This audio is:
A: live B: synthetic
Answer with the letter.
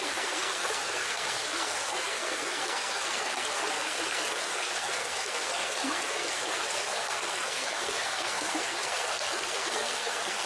B